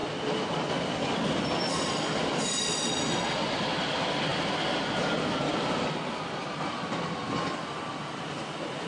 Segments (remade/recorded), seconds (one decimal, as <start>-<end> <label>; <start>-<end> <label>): 0.0-8.9 recorded